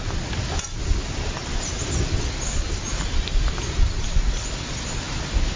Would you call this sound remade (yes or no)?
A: no